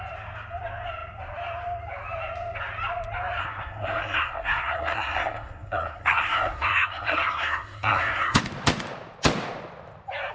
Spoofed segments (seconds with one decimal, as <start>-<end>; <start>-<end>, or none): 3.4-8.4